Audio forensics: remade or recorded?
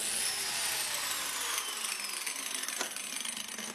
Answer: recorded